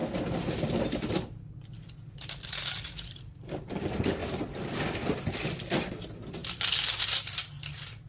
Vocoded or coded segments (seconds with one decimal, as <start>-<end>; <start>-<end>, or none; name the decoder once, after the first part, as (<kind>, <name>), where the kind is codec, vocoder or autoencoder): none